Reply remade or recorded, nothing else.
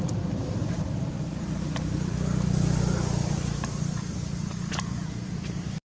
remade